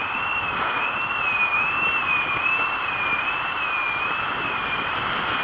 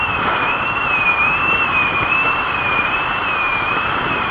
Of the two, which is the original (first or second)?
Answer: first